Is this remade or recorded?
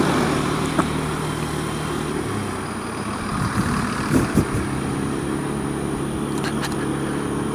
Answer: recorded